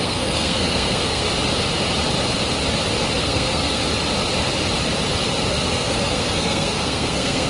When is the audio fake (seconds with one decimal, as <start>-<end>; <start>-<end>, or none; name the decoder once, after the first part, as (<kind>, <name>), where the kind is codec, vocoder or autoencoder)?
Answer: 0.0-1.3 (codec, SNAC); 3.2-3.8; 5.5-7.5